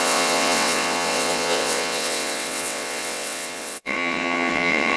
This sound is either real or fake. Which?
fake